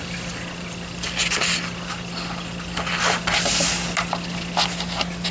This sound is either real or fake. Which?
real